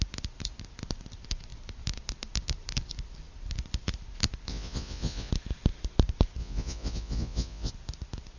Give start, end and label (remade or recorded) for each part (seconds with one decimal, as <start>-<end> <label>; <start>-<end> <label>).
0.0-4.5 recorded; 4.5-5.3 remade; 5.3-6.4 recorded; 6.4-7.7 remade; 7.7-8.4 recorded